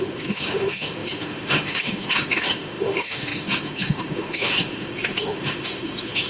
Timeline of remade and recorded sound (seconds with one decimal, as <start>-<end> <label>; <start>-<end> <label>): 0.0-6.3 remade